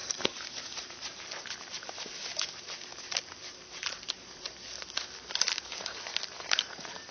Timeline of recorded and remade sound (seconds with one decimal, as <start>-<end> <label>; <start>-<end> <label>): 0.0-7.1 recorded